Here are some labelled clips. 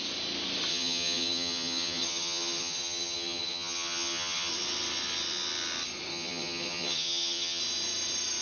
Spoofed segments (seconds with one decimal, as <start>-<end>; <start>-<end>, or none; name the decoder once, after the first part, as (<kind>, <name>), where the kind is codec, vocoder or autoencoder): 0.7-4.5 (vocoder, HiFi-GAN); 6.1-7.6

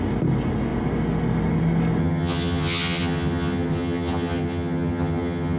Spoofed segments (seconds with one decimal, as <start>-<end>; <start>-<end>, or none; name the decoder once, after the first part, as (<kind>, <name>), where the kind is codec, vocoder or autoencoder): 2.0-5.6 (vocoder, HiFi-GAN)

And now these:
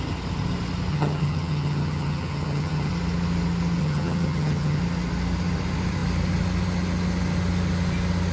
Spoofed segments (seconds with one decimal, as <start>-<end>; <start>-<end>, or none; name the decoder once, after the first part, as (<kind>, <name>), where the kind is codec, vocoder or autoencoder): 0.9-2.9 (vocoder, HiFi-GAN); 3.8-4.8

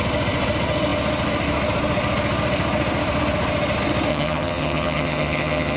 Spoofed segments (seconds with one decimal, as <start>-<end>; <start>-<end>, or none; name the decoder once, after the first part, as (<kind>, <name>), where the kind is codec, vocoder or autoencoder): 4.1-5.8 (vocoder, HiFi-GAN)

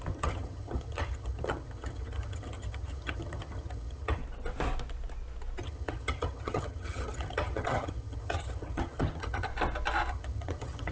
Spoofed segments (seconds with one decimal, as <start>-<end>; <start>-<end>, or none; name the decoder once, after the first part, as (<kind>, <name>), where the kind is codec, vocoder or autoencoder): 0.0-4.2 (vocoder, HiFi-GAN); 5.6-9.5; 10.1-10.9